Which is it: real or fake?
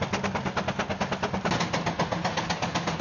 real